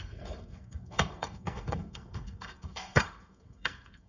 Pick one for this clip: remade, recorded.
remade